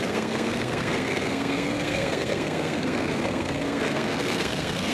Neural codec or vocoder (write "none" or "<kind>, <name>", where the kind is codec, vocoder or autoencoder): codec, SNAC